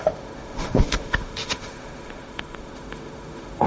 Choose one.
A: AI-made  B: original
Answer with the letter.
A